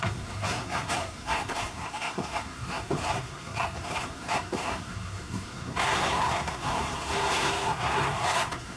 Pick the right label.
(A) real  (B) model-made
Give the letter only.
B